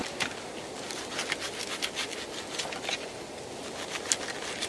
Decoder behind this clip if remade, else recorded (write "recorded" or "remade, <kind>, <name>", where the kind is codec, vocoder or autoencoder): recorded